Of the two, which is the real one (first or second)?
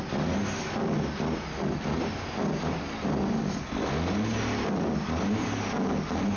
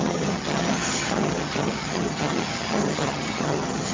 first